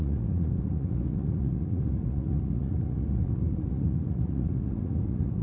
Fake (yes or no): yes